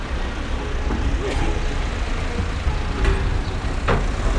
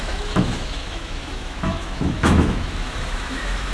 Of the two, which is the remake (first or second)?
second